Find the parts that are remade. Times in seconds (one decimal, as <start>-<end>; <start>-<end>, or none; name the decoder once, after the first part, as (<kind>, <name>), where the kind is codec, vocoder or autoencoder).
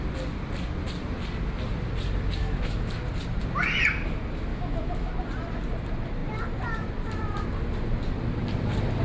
2.4-2.9 (autoencoder, DAC-VAE); 4.5-5.1